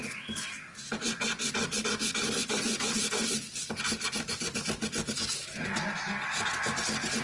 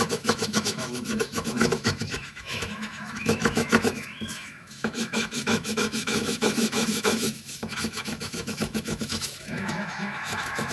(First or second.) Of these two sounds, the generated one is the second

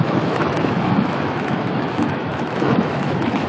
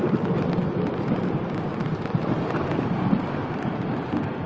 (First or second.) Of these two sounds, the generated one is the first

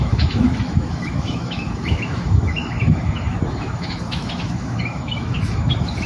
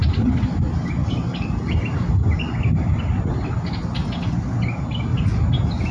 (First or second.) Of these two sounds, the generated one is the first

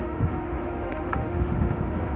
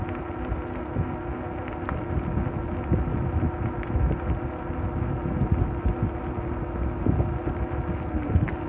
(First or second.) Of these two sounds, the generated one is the first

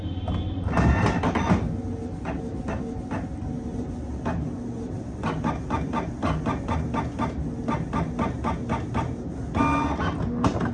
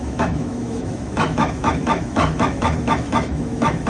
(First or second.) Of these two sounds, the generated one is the second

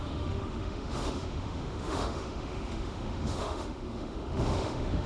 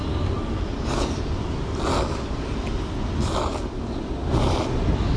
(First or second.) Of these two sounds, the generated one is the first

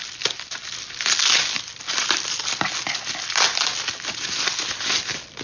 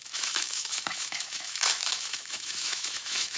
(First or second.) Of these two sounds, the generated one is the second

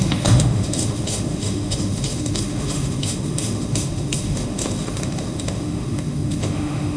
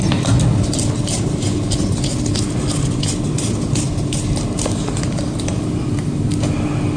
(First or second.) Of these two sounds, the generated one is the first